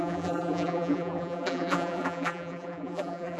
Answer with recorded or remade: remade